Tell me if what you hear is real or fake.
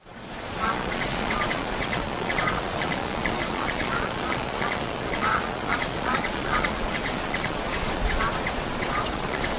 fake